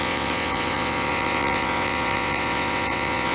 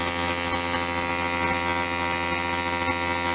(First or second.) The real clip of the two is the second